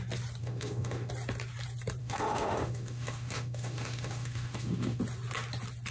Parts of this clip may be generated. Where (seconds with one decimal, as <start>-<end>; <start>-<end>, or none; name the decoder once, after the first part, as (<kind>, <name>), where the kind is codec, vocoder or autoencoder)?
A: 0.4-1.1 (autoencoder, DAC-VAE); 2.0-5.0